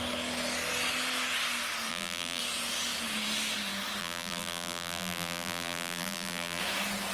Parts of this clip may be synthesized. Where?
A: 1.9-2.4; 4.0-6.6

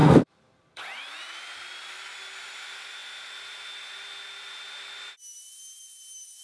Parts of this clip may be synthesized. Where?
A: 0.0-1.2

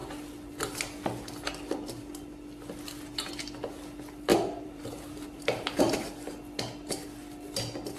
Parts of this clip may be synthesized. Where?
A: 4.3-5.8

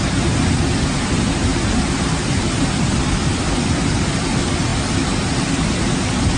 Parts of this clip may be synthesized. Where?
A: 1.5-4.1

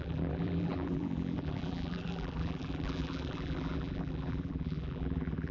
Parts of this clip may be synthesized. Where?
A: 0.0-5.5

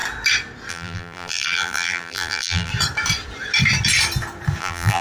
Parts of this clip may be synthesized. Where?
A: 0.7-2.7; 4.6-5.0